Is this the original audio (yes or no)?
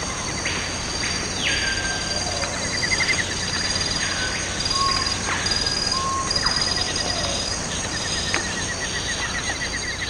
yes